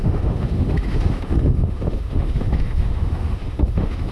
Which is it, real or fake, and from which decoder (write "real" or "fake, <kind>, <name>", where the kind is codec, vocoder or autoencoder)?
fake, autoencoder, DAC-VAE